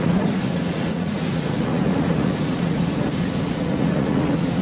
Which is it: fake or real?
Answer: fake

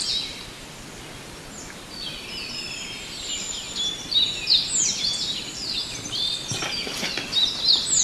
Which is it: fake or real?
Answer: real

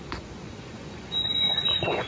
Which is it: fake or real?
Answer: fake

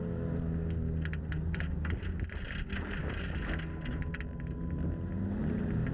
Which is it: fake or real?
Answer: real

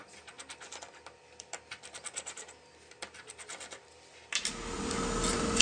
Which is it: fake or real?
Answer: real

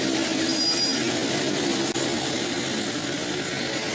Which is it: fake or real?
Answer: real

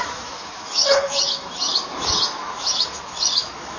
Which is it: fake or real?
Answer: fake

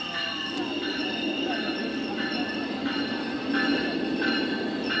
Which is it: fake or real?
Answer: real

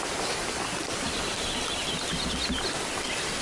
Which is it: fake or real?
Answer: real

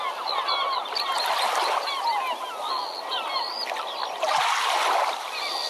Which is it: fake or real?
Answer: real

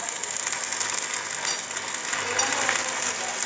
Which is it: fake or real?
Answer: real